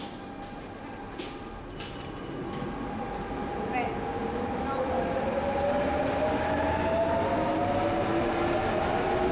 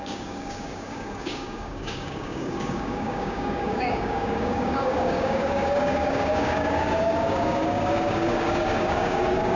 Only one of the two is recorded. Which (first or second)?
first